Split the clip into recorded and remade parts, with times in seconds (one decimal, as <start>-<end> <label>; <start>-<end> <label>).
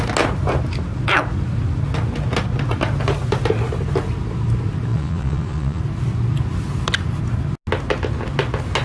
0.0-4.9 recorded; 4.9-5.8 remade; 5.8-8.8 recorded